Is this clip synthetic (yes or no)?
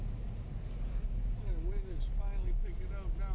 no